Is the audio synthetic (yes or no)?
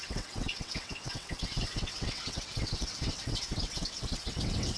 yes